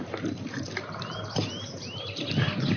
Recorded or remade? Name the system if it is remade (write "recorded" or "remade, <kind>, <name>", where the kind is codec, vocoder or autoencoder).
recorded